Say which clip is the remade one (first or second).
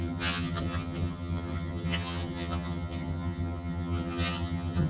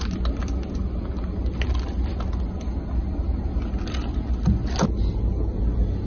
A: first